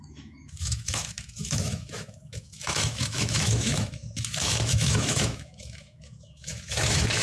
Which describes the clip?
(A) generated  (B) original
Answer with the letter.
A